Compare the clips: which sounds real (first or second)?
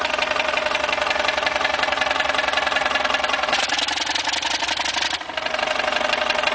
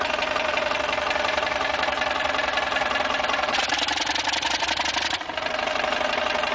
first